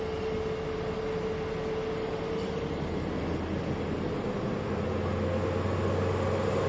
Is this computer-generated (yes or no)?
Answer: no